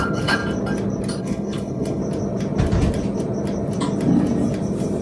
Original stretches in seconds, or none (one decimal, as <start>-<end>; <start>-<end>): 0.4-1.2; 2.0-5.0